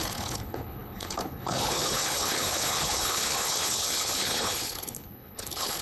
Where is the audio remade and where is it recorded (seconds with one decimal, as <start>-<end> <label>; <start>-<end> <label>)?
0.0-5.8 remade